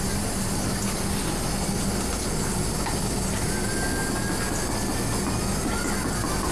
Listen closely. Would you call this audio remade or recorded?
recorded